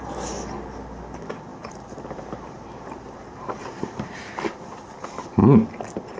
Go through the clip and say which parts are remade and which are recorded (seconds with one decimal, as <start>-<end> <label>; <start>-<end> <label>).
0.0-1.5 recorded; 1.5-4.9 remade; 4.9-6.2 recorded